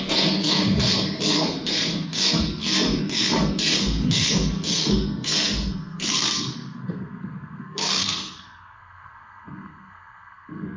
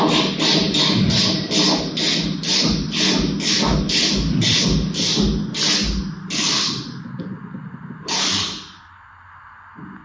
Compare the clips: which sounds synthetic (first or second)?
first